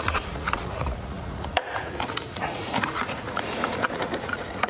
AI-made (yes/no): yes